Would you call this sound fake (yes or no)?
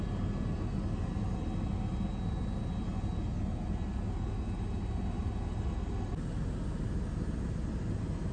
no